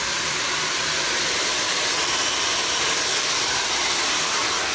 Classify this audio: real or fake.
fake